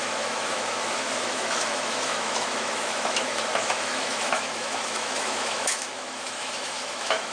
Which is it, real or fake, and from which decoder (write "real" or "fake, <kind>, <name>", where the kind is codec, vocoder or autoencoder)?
fake, autoencoder, DAC-VAE